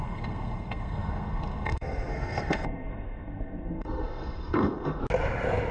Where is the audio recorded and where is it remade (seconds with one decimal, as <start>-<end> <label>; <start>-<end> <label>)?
0.0-5.0 remade; 5.0-5.7 recorded